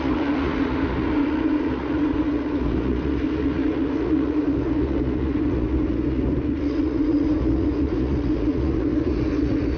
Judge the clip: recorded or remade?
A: remade